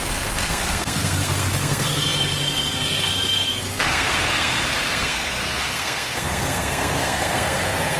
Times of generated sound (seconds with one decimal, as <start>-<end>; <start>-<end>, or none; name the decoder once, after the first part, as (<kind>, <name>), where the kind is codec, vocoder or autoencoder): 0.0-8.0 (codec, SNAC)